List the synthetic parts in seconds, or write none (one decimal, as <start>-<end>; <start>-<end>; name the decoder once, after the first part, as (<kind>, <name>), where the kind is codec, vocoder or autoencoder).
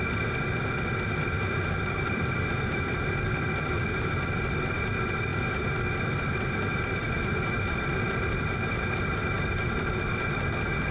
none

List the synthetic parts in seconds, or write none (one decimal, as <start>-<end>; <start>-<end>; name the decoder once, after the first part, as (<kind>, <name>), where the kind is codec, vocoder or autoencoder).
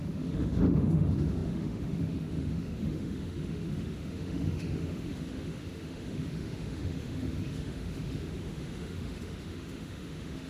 0.0-10.5 (autoencoder, DAC-VAE)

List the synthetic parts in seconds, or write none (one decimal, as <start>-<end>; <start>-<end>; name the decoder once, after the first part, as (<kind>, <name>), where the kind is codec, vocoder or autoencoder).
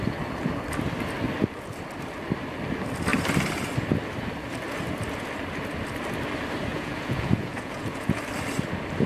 6.7-8.2 (vocoder, Vocos)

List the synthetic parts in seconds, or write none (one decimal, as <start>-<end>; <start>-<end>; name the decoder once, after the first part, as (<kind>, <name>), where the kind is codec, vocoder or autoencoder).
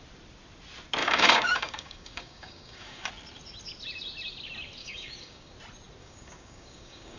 1.0-3.1 (codec, DAC); 4.8-5.5; 6.0-7.2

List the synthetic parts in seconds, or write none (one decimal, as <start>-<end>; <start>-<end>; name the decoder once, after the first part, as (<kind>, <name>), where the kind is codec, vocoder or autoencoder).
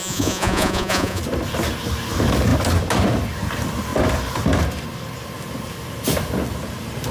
0.0-1.2 (vocoder, Vocos)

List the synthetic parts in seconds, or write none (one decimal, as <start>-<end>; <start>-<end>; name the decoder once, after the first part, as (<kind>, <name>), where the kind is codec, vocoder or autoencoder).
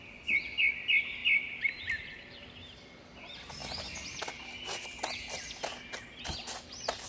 none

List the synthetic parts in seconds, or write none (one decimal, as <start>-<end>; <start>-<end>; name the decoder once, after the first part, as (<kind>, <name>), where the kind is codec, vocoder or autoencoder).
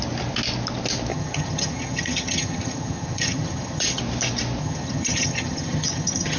1.1-4.0 (vocoder, HiFi-GAN); 4.6-6.4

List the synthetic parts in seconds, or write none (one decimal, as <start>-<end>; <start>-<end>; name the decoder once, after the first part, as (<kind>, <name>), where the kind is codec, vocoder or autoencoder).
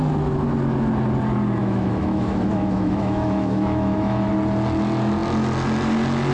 1.6-4.3 (autoencoder, DAC-VAE)